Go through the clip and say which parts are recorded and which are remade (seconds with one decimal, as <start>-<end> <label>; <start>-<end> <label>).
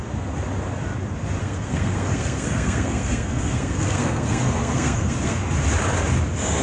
0.0-1.4 recorded; 1.4-5.4 remade; 5.4-6.6 recorded